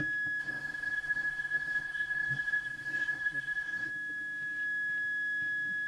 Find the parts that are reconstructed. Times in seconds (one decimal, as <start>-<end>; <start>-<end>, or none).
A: 0.4-3.9